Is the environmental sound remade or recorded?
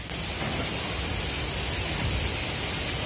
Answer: recorded